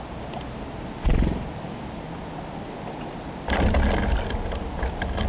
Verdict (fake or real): real